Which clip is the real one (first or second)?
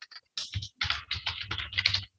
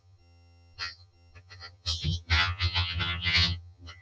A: first